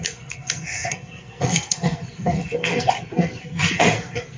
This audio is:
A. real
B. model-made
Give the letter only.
B